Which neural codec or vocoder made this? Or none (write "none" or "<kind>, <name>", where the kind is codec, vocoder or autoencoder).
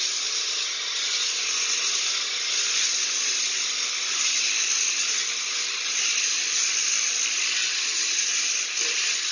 none